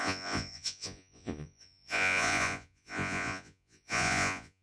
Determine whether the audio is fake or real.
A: fake